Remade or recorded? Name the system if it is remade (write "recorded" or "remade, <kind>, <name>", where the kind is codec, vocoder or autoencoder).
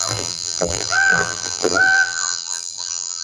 remade, vocoder, BigVGAN v2